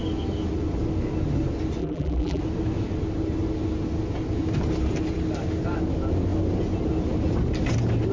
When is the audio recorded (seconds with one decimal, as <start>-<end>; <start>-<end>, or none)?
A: 0.0-1.8; 2.4-8.1